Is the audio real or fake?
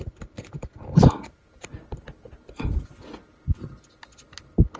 real